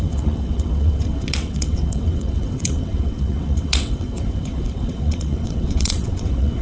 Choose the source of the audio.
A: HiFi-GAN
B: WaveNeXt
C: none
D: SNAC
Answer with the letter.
B